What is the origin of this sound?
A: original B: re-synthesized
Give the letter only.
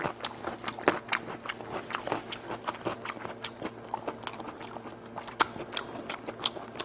A